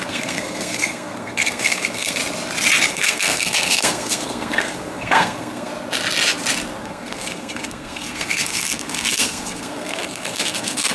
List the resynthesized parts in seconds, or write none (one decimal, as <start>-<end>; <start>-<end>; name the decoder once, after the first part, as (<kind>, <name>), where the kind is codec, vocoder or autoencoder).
0.0-2.2 (codec, SNAC); 2.9-5.7; 6.8-10.9